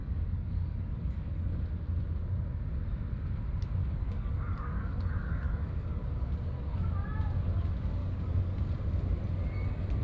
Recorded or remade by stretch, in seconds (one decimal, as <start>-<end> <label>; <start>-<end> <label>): 0.0-1.4 remade; 1.4-3.8 recorded; 3.8-6.9 remade; 6.9-8.0 recorded; 8.0-8.6 remade; 8.6-10.0 recorded